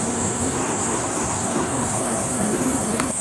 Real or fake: fake